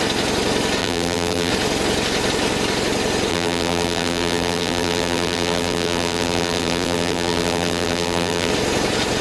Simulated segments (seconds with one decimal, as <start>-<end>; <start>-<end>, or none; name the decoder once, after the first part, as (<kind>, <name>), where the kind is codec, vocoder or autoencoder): 0.8-1.5 (vocoder, BigVGAN v2); 3.3-8.5